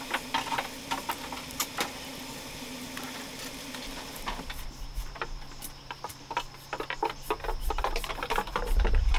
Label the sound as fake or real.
real